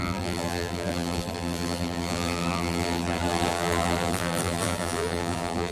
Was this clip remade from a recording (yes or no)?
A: yes